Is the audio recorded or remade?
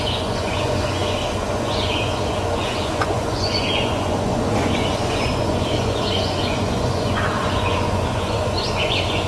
remade